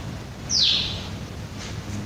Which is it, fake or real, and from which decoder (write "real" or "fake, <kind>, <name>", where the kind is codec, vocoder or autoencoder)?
real